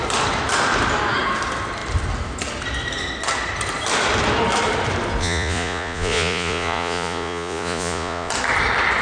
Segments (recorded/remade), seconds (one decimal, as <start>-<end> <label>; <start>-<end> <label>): 0.0-5.2 recorded; 5.2-8.3 remade; 8.3-9.0 recorded